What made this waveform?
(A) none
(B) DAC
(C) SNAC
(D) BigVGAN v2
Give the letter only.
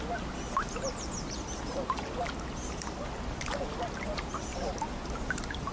A